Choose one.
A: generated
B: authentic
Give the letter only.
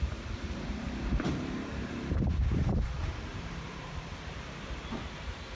A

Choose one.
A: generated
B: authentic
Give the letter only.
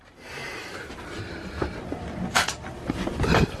A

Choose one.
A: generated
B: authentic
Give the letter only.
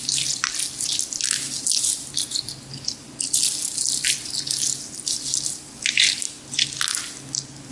B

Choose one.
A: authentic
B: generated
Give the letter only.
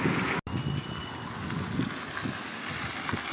A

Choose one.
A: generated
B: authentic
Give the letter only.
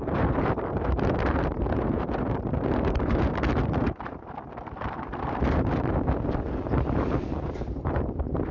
A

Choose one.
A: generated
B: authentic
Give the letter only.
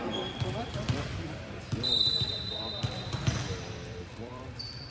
A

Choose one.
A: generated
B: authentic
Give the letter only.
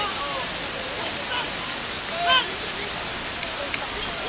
B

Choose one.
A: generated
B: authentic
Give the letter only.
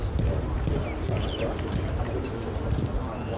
B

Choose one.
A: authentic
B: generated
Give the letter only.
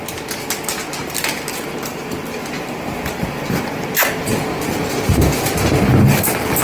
A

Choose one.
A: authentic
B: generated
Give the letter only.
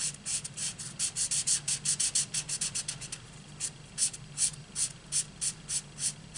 A